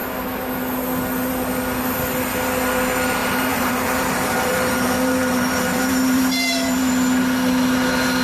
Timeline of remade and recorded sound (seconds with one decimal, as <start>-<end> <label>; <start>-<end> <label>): 0.0-3.2 recorded; 3.2-6.9 remade; 6.9-8.2 recorded